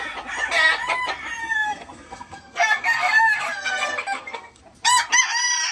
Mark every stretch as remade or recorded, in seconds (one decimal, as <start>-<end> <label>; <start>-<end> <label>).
0.0-1.4 recorded; 1.4-4.6 remade; 4.6-5.7 recorded